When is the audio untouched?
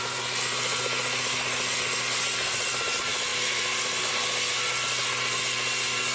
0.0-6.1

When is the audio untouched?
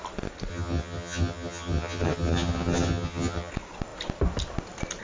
0.0-0.5; 3.5-5.0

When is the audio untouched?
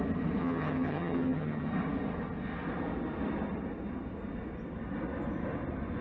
0.0-0.4; 1.7-6.0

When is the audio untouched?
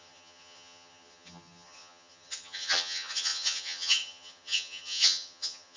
none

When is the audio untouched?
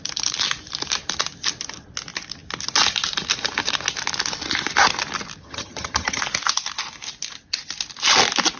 0.0-5.4; 6.2-8.6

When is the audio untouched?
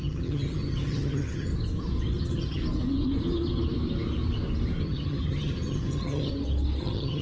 1.5-2.2; 2.6-4.8; 6.3-6.8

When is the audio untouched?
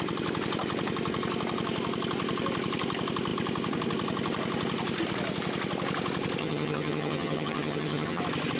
0.0-6.4; 8.2-8.6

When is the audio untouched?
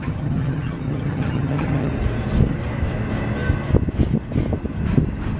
1.9-5.4